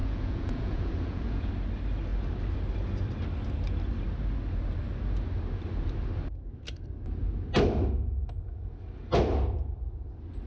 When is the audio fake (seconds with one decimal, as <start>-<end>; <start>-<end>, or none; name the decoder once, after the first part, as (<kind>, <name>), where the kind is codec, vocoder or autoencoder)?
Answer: 0.0-1.5 (vocoder, Vocos)